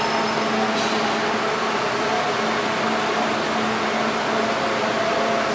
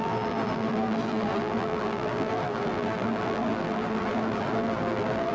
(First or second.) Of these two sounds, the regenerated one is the second